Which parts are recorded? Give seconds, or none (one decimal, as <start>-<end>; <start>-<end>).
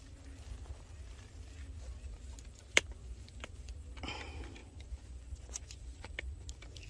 0.0-3.0; 3.7-4.6; 6.1-6.9